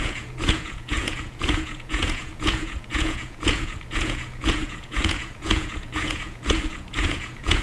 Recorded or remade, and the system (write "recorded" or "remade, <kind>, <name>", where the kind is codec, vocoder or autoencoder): remade, vocoder, Vocos